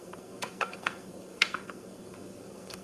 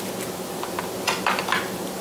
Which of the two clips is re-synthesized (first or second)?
first